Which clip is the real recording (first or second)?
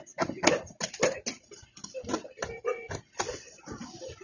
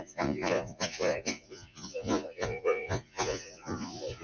first